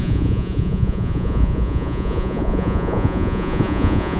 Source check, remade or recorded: remade